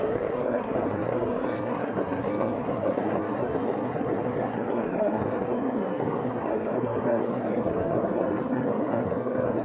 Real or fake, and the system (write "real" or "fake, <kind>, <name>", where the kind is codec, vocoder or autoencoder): fake, codec, SNAC